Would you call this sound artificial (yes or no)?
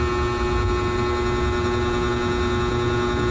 no